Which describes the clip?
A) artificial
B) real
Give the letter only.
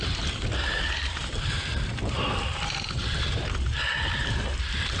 A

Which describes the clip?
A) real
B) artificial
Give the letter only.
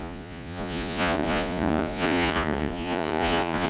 B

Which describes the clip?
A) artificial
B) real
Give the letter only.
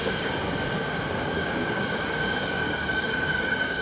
A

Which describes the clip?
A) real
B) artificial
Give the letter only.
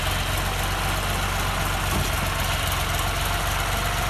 A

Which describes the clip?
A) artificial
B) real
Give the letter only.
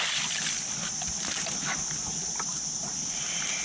B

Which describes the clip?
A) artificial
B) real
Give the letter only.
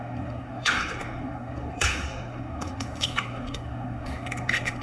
A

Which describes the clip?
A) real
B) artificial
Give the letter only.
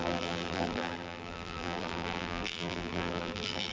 B